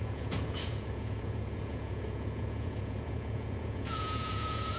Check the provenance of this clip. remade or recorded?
remade